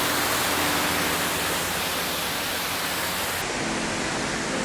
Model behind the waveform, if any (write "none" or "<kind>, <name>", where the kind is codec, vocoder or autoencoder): none